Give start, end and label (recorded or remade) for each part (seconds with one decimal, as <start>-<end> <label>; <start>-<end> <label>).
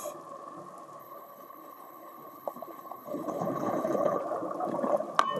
0.0-1.0 recorded; 1.0-4.2 remade; 4.2-5.4 recorded